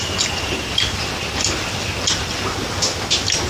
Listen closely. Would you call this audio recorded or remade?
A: recorded